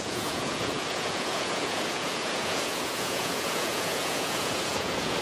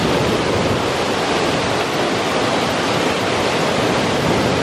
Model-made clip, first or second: first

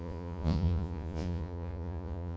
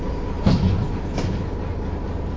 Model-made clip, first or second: first